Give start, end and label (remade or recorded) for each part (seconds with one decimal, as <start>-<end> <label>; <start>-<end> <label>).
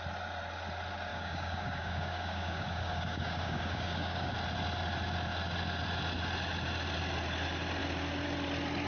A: 0.0-1.1 recorded; 1.1-4.3 remade; 4.3-8.9 recorded